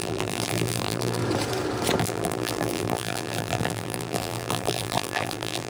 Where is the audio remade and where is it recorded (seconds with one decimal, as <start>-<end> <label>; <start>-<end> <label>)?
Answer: 0.0-1.2 remade; 1.2-2.0 recorded; 2.0-5.7 remade